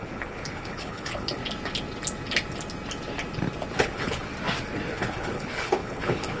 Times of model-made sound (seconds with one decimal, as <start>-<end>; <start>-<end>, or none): 0.0-1.4; 3.7-4.3; 4.9-6.4